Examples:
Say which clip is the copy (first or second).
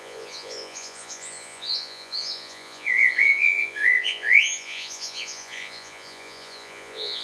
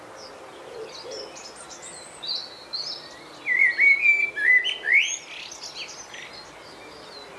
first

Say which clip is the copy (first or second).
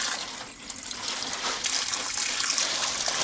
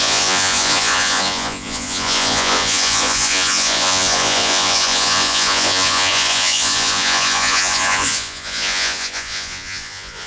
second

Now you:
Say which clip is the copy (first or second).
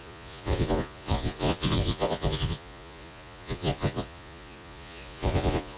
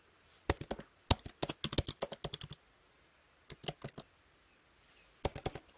first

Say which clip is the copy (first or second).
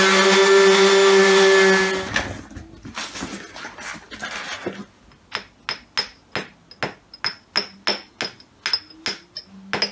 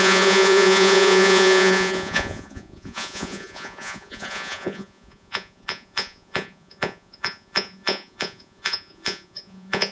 second